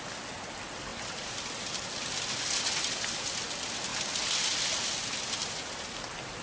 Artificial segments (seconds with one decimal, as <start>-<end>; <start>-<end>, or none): none